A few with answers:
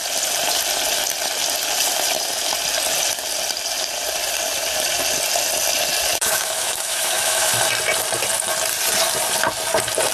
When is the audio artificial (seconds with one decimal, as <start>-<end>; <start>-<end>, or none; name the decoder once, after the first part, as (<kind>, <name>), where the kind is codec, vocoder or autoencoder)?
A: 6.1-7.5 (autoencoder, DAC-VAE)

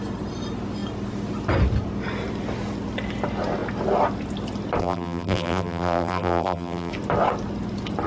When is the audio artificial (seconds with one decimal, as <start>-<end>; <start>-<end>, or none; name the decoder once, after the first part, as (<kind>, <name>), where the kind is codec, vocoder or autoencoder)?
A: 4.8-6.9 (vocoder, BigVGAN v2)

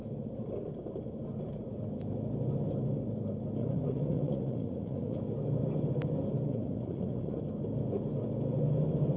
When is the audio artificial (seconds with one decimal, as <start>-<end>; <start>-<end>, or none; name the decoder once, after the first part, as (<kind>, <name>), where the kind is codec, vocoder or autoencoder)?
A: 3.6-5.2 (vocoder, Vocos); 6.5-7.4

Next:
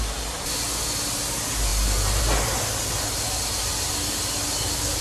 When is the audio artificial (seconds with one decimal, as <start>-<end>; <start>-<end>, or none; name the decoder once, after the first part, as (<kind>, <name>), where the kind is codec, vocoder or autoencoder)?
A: none

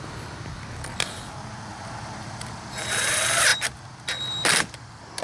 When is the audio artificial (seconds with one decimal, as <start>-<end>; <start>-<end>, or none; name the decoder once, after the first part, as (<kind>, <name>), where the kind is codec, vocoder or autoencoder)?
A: 1.7-2.8 (vocoder, BigVGAN v2)

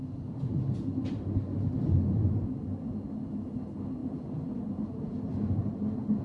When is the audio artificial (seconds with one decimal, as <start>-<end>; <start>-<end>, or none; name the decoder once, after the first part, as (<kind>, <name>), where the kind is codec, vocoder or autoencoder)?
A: none